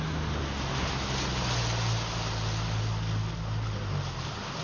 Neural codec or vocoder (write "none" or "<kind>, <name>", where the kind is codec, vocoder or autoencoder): none